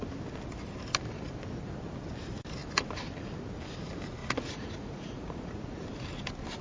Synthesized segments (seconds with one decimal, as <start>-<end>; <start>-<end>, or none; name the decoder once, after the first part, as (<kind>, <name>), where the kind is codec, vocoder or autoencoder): 4.2-5.8 (vocoder, Vocos)